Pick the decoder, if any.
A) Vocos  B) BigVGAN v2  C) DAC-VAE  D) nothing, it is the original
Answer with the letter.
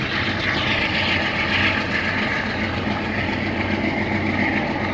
D